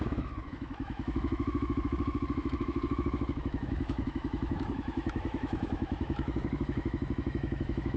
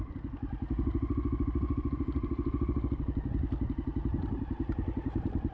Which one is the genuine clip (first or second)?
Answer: second